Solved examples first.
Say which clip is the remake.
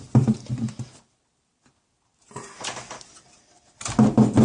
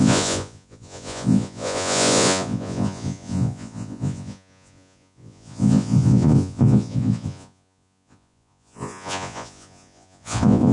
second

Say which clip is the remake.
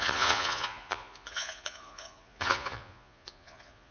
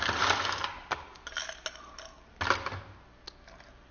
first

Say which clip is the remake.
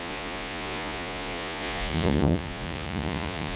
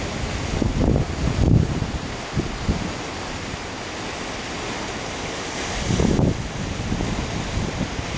first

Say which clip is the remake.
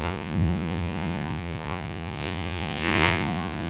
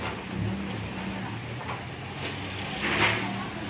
first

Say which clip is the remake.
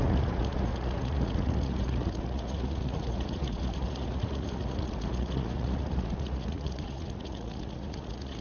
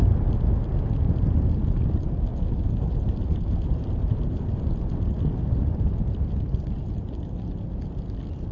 first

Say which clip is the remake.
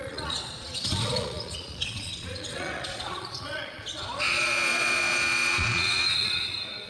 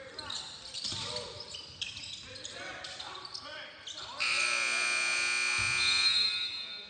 first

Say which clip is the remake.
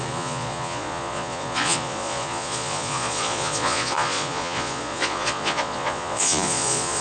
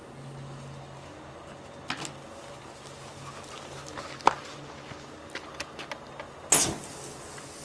first